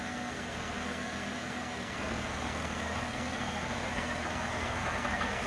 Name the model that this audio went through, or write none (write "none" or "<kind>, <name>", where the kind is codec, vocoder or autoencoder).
codec, SNAC